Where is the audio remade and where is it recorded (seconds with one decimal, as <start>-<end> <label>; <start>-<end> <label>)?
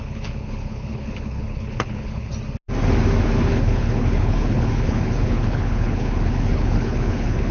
0.0-2.3 remade; 2.3-3.5 recorded; 3.5-7.5 remade